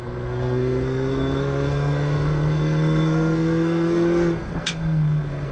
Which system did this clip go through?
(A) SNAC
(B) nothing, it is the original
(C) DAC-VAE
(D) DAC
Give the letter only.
A